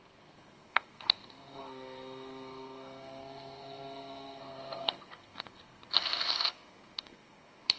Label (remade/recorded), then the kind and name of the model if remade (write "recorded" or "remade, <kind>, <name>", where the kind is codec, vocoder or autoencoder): remade, codec, SNAC